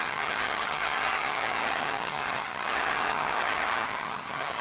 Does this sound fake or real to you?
fake